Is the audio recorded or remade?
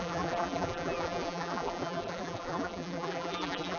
remade